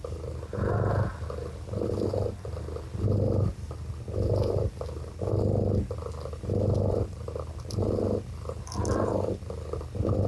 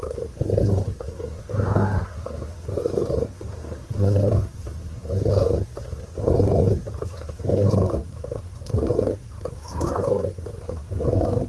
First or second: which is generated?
second